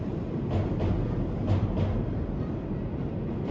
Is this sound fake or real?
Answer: real